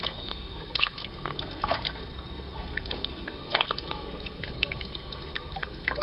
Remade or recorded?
remade